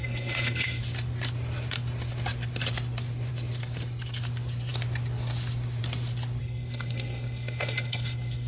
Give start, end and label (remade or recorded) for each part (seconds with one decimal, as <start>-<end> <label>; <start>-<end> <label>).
0.0-0.8 remade; 0.8-6.4 recorded; 6.4-8.5 remade